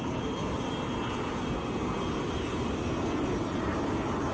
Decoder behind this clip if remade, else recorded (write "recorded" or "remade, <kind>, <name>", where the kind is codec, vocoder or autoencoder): recorded